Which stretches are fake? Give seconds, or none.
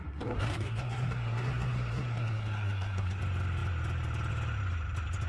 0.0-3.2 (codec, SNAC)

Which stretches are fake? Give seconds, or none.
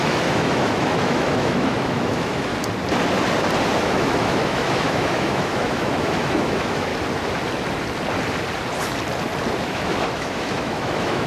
0.0-2.5 (autoencoder, DAC-VAE); 3.8-6.9; 9.6-11.3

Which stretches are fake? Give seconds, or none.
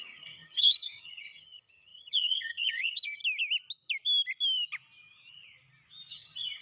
0.0-3.2 (vocoder, HiFi-GAN); 6.1-6.6